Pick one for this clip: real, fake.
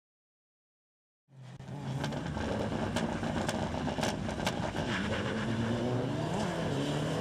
real